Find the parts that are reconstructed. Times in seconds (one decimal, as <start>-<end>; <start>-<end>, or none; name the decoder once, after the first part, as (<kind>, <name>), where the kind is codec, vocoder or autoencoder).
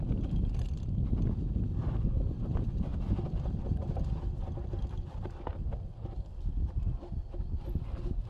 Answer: none